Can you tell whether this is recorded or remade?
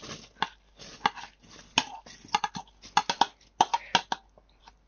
recorded